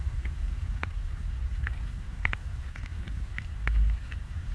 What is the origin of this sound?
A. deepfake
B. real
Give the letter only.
A